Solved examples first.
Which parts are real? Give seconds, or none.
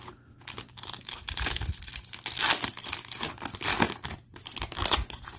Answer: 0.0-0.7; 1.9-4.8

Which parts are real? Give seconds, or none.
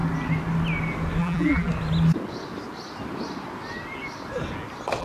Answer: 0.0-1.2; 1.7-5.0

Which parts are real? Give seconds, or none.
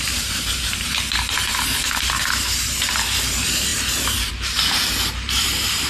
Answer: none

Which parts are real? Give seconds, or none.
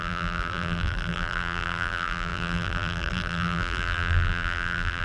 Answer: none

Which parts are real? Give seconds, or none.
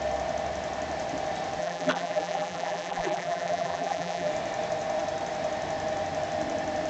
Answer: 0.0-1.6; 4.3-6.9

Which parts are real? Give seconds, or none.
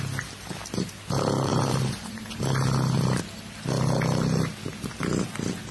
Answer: 0.0-1.5; 2.3-5.7